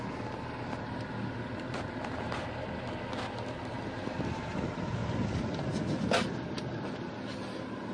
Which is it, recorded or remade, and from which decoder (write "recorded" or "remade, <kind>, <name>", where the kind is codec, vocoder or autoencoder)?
recorded